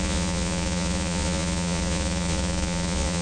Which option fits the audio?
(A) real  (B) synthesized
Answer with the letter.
B